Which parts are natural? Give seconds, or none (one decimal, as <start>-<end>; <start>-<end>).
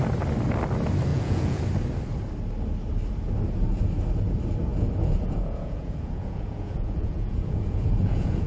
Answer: 0.0-1.1; 1.6-4.7